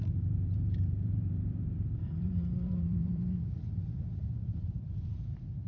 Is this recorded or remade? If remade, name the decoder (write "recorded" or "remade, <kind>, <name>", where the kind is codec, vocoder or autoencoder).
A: remade, vocoder, BigVGAN v2